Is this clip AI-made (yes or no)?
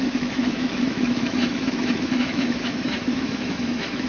yes